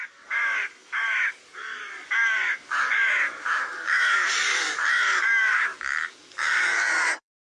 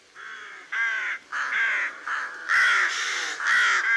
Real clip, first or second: second